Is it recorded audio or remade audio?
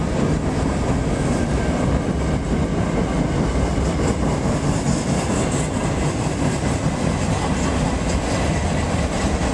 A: recorded